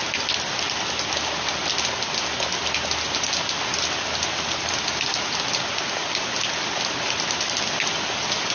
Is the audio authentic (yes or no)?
yes